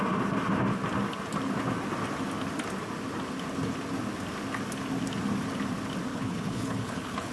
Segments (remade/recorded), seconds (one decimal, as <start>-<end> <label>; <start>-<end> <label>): 0.0-6.1 recorded; 6.1-7.3 remade